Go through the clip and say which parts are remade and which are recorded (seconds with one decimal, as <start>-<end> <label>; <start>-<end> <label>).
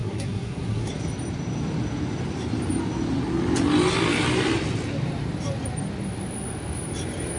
0.0-0.9 remade; 0.9-7.4 recorded